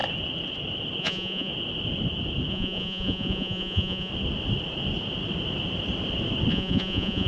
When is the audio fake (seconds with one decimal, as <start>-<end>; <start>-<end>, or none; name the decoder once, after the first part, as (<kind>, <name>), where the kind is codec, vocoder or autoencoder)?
1.0-1.5 (vocoder, Vocos); 2.5-4.1; 6.5-7.3